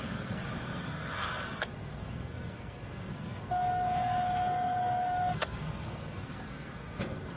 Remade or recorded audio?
remade